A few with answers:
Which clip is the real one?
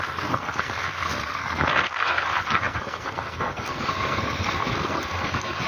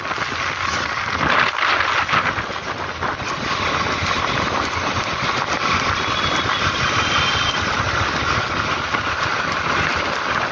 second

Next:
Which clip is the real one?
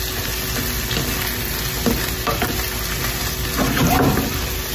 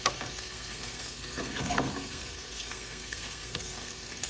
first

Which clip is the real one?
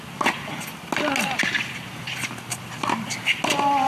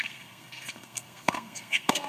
first